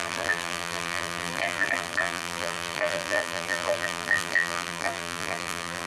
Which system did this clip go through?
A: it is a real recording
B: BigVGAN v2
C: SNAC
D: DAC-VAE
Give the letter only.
B